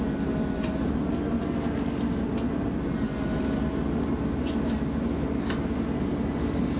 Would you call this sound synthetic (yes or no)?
no